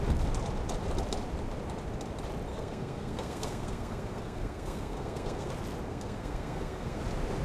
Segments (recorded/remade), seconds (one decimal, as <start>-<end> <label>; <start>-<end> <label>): 0.0-2.5 recorded; 2.5-5.5 remade; 5.5-5.9 recorded; 5.9-7.0 remade; 7.0-7.4 recorded